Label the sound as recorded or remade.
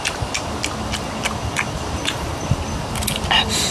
recorded